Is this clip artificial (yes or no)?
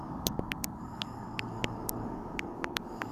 yes